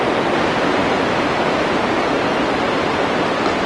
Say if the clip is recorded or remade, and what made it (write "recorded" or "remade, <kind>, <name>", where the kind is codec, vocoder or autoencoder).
recorded